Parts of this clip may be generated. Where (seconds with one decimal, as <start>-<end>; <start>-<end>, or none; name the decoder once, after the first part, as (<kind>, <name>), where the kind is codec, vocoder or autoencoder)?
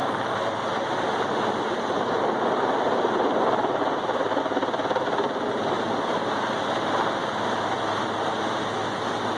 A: none